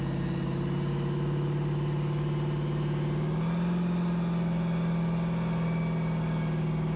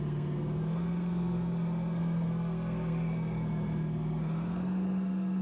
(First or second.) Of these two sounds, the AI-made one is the second